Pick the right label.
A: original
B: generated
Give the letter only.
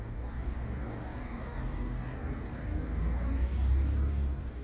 B